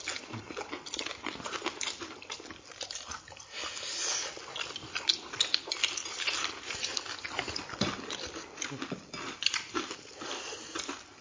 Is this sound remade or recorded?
recorded